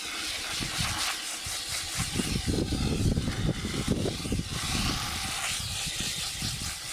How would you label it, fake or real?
fake